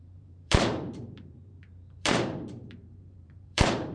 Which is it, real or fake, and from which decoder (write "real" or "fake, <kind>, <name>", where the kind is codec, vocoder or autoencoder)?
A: fake, vocoder, BigVGAN v2